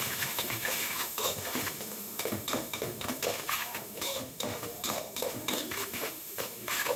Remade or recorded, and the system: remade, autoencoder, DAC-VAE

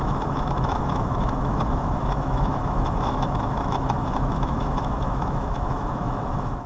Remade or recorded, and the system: remade, autoencoder, DAC-VAE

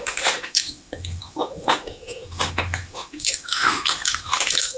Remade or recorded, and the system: remade, autoencoder, DAC-VAE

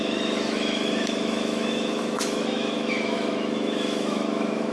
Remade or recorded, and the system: remade, autoencoder, DAC-VAE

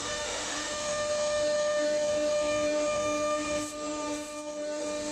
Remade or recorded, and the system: remade, autoencoder, DAC-VAE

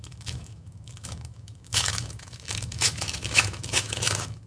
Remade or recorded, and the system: remade, autoencoder, DAC-VAE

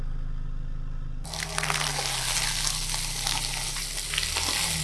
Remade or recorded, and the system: recorded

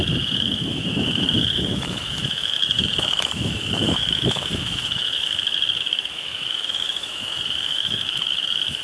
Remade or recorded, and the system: remade, autoencoder, DAC-VAE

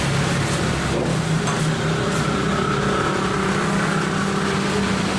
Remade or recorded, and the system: recorded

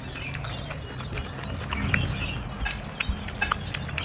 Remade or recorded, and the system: recorded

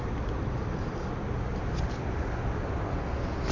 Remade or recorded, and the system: recorded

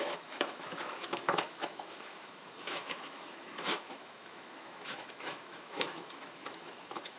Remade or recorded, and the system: remade, autoencoder, DAC-VAE